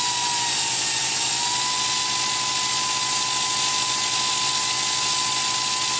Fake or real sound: real